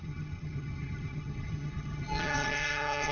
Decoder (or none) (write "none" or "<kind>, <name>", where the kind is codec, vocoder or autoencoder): vocoder, HiFi-GAN